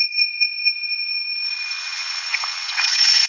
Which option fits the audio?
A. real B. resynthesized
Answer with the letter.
B